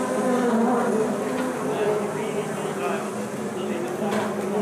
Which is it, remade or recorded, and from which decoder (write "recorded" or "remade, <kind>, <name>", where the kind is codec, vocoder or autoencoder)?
recorded